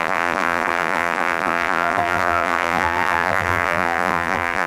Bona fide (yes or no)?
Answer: no